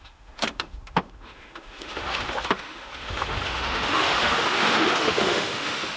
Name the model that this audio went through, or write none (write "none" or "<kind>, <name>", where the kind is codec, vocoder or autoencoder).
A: autoencoder, DAC-VAE